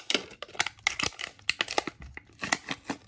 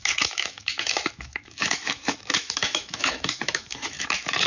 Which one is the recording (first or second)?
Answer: first